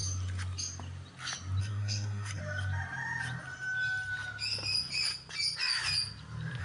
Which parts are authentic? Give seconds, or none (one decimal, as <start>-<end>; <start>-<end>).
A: 0.0-1.6; 2.4-6.6